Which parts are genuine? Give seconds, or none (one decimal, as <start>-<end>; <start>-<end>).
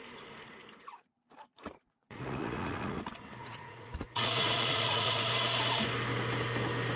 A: 0.0-1.5; 3.0-3.4; 5.3-7.0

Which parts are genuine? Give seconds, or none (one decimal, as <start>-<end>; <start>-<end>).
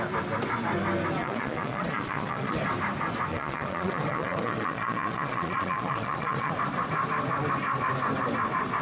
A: 0.0-1.2; 2.6-3.3; 6.5-8.8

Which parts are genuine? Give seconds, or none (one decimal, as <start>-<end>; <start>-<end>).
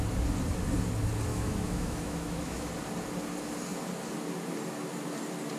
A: 0.0-1.3; 2.7-5.6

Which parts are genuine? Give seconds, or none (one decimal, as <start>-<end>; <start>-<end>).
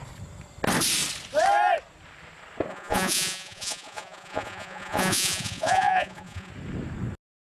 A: 0.0-2.7; 6.5-7.5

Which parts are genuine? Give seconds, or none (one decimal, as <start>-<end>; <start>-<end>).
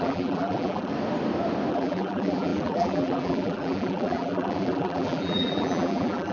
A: 0.9-1.7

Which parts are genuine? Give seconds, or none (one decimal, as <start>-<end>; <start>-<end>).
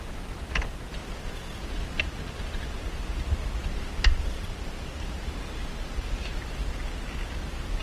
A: 0.0-3.6; 6.4-7.8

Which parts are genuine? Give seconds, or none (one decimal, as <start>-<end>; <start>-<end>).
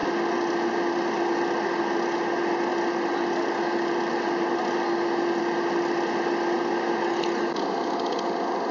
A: 0.0-8.7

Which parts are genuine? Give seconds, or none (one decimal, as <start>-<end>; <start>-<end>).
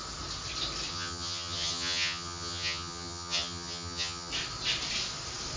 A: 0.0-0.9; 4.3-5.6